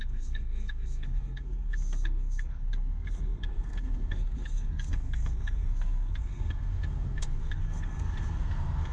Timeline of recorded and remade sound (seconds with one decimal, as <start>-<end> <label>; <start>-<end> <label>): 0.0-8.9 remade